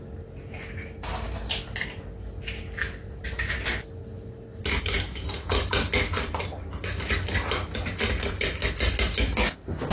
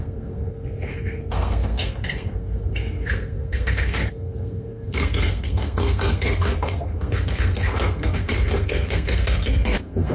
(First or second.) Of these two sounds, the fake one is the second